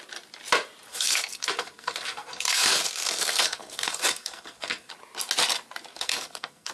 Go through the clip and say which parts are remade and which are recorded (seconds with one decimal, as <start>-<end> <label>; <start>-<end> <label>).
0.0-0.9 recorded; 0.9-4.9 remade; 4.9-5.9 recorded; 5.9-6.7 remade